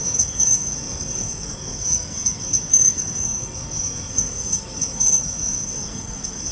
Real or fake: fake